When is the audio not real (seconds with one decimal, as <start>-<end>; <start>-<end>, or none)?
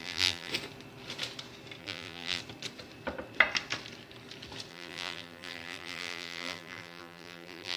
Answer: 0.0-0.5; 1.8-2.4; 4.7-7.8